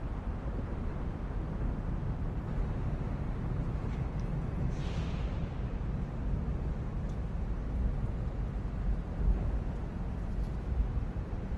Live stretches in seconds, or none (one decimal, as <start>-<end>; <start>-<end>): 0.9-3.4; 5.4-10.1